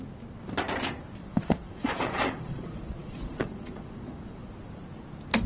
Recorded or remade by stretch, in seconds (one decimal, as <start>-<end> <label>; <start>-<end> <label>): 0.0-1.2 recorded; 1.2-4.5 remade; 4.5-5.5 recorded